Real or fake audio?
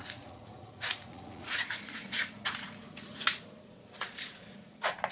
fake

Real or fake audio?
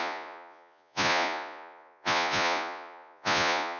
fake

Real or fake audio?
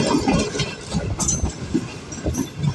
real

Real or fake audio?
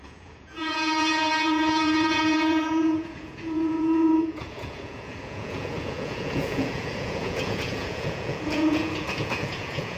fake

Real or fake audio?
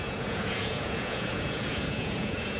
fake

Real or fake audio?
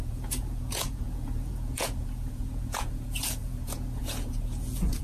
fake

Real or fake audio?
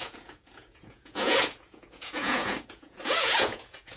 fake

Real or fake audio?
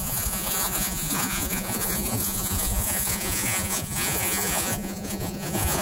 fake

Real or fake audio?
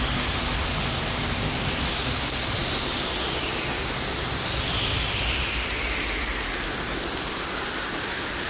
real